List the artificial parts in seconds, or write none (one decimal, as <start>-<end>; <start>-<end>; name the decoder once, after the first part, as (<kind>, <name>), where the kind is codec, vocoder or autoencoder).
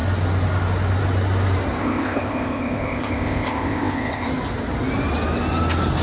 1.8-4.3 (codec, ZipCodec)